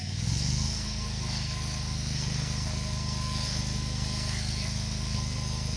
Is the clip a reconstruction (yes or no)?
yes